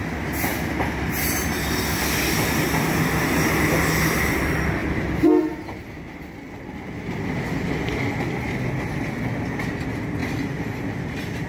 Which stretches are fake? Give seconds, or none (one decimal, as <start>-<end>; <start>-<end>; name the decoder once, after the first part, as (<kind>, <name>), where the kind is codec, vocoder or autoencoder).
none